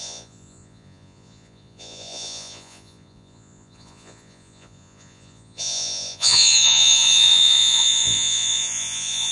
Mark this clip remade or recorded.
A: remade